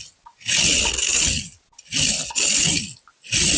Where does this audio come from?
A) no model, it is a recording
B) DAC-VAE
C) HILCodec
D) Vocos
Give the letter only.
A